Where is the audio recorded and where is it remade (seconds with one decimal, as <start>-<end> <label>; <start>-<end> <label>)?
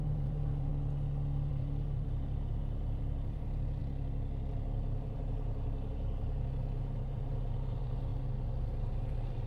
0.0-0.7 remade; 0.7-1.5 recorded; 1.5-3.8 remade; 3.8-4.5 recorded; 4.5-8.1 remade; 8.1-8.6 recorded; 8.6-9.5 remade